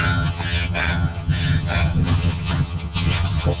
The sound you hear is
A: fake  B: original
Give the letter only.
A